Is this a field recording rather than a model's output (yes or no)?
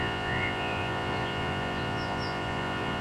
no